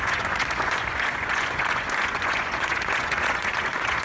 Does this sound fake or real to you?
fake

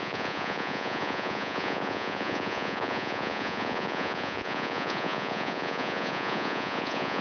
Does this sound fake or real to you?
fake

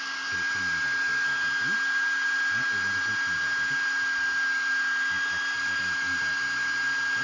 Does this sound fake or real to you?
real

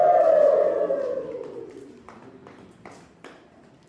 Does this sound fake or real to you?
fake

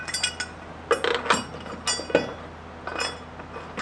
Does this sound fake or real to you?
real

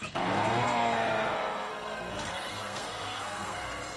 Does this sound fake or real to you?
fake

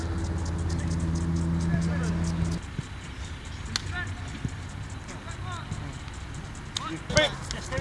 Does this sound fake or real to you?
real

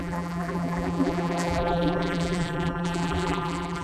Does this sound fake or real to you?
fake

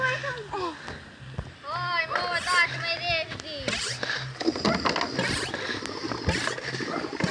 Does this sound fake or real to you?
real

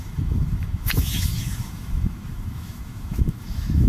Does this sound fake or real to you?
fake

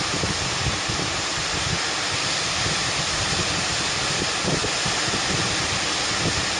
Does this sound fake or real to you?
real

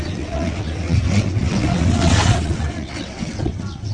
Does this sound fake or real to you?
fake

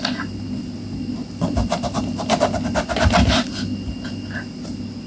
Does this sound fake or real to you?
real